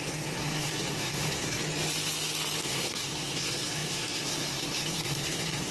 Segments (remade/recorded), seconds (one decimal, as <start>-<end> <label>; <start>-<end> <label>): 0.0-1.6 remade; 1.6-2.6 recorded; 2.6-5.7 remade